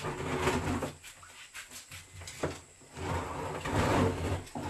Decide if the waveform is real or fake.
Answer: real